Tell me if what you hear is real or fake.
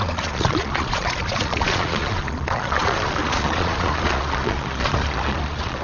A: fake